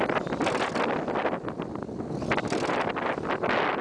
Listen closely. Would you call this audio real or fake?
real